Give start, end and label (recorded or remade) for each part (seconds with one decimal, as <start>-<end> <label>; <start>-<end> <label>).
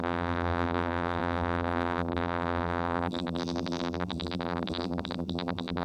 0.0-5.8 remade